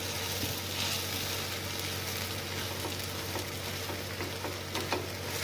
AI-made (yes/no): no